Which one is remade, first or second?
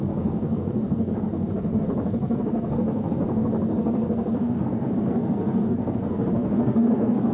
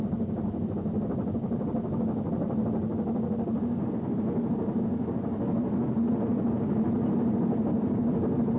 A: first